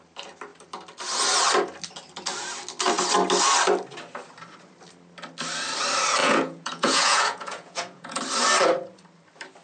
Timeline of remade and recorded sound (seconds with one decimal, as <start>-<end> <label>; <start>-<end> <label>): 0.0-6.2 recorded; 6.2-8.2 remade; 8.2-9.6 recorded

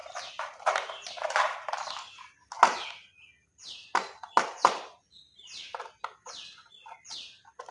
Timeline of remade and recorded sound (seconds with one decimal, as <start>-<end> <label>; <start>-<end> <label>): 0.0-1.1 remade; 1.1-7.7 recorded

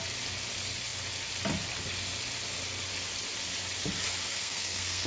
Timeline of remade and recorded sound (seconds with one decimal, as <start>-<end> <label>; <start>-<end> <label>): 0.0-4.3 recorded; 4.3-5.1 remade

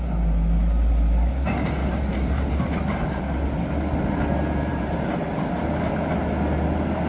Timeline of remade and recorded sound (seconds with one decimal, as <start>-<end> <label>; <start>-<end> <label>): 0.0-1.8 recorded; 1.8-3.2 remade; 3.2-4.7 recorded; 4.7-5.5 remade; 5.5-7.1 recorded

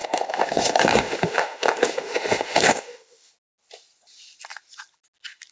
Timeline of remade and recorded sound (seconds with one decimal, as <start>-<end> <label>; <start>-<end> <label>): 0.0-3.3 remade; 3.3-5.5 recorded

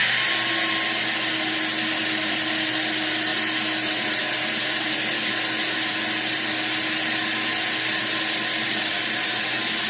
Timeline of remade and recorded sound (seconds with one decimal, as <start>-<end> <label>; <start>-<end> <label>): 0.0-9.9 recorded